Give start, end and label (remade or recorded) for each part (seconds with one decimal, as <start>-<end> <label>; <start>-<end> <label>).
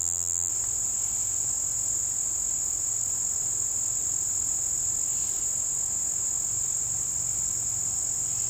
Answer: 0.0-0.5 remade; 0.5-8.5 recorded